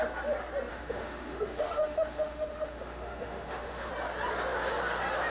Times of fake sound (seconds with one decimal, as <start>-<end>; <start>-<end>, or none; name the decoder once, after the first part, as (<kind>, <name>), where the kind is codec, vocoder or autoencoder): 0.7-3.9 (autoencoder, DAC-VAE)